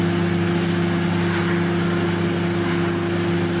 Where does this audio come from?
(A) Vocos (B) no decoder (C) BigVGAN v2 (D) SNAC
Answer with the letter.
B